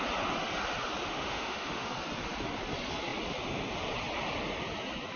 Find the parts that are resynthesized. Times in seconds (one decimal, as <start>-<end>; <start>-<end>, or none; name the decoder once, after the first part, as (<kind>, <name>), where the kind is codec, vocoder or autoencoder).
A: 1.0-1.9 (autoencoder, DAC-VAE)